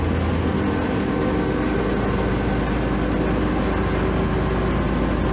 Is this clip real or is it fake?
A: real